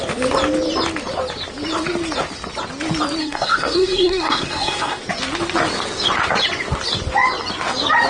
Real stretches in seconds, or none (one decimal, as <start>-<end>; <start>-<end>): 0.0-3.2; 5.0-8.1

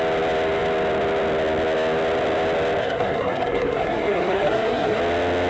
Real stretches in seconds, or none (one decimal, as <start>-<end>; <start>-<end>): 0.0-2.8; 5.0-5.5

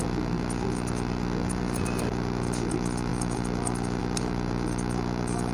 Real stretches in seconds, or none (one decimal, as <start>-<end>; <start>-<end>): 0.0-5.5

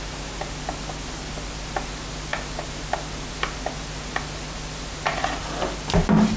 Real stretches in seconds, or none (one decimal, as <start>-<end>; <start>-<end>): 0.0-6.4